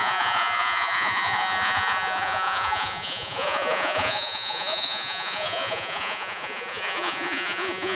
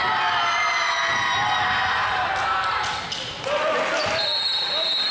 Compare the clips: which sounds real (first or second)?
second